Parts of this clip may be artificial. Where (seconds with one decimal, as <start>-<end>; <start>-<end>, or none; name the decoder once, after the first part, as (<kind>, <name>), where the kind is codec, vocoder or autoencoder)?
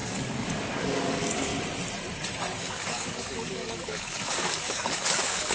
0.0-1.5 (codec, DAC); 2.6-5.5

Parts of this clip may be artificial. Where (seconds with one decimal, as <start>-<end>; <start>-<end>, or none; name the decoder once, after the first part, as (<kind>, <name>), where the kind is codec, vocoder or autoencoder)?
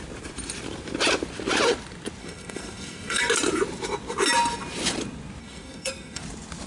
2.2-3.2 (codec, SNAC); 5.4-6.2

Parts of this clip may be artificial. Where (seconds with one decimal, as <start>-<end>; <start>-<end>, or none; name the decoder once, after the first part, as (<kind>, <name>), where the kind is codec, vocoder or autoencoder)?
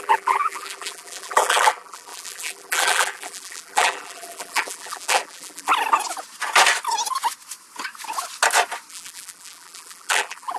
0.0-5.7 (vocoder, BigVGAN v2); 8.9-10.6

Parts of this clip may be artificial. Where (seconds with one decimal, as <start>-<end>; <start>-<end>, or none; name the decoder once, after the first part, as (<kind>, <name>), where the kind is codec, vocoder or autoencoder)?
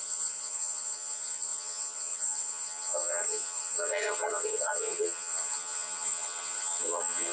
0.0-7.3 (vocoder, HiFi-GAN)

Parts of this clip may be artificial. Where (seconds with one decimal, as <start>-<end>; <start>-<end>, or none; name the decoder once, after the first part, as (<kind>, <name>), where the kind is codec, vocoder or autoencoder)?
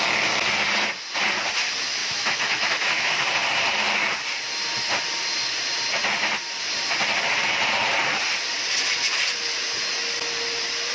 2.0-3.1 (autoencoder, DAC-VAE)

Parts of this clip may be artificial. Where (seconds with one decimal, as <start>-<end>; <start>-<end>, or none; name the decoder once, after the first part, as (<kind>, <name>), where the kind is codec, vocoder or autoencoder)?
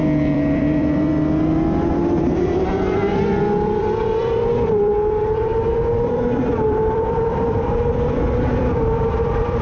0.0-1.1 (vocoder, BigVGAN v2); 2.0-9.6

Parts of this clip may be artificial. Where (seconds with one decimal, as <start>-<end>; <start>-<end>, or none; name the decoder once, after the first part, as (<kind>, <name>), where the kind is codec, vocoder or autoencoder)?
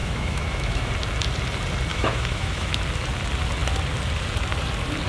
0.0-0.9 (autoencoder, DAC-VAE); 1.9-2.8